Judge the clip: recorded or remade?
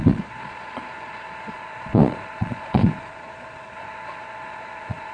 remade